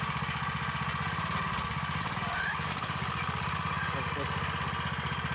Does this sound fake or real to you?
real